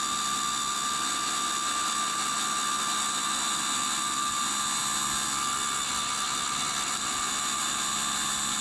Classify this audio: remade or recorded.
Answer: recorded